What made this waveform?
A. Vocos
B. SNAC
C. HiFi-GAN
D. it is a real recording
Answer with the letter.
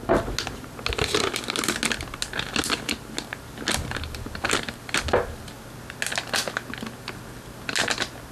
D